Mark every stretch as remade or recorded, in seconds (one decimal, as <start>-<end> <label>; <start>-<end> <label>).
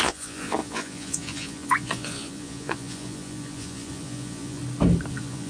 0.0-4.6 remade; 4.6-5.1 recorded; 5.1-5.5 remade